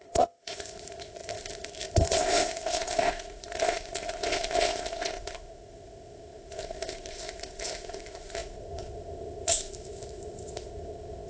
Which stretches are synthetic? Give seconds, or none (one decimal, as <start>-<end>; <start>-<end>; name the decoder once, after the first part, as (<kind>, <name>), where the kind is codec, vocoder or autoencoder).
0.0-11.3 (codec, ZipCodec)